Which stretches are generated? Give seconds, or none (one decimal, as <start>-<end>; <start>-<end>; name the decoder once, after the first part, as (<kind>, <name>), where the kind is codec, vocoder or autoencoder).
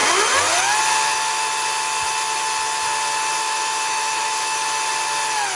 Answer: 3.4-4.6 (autoencoder, DAC-VAE)